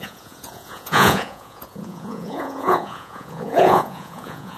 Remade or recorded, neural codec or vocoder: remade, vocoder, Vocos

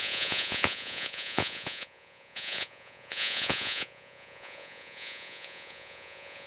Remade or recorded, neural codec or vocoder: remade, vocoder, Vocos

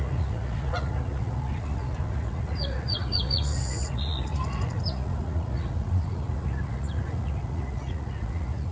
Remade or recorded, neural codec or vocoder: remade, vocoder, Vocos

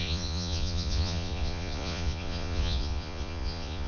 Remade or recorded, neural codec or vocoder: remade, vocoder, Vocos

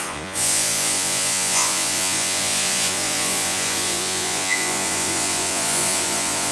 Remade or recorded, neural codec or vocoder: remade, vocoder, Vocos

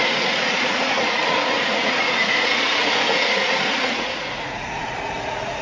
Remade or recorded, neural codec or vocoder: remade, vocoder, Vocos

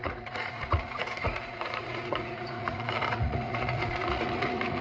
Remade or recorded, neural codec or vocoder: remade, vocoder, Vocos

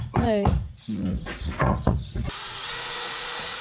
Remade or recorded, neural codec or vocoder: remade, vocoder, Vocos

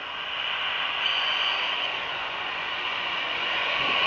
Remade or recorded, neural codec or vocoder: remade, vocoder, Vocos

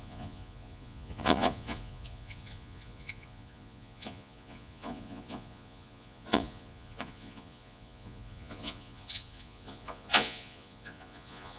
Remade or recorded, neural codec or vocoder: remade, vocoder, Vocos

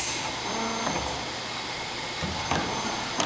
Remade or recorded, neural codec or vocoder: recorded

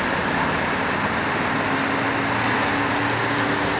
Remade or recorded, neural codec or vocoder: recorded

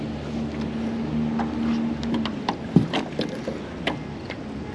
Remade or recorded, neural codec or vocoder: recorded